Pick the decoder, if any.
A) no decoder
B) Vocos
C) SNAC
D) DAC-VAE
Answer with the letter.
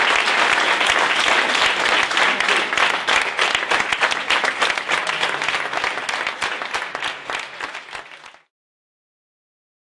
A